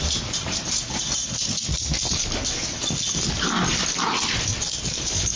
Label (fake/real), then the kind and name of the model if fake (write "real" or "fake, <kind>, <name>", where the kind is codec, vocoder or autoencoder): real